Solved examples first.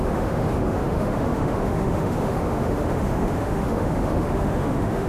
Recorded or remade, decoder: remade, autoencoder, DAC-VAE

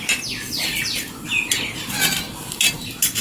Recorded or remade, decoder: recorded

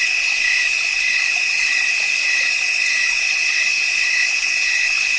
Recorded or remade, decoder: remade, vocoder, Vocos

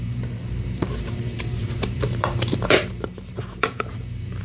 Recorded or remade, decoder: remade, vocoder, BigVGAN v2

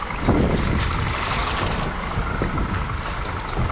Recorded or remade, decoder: recorded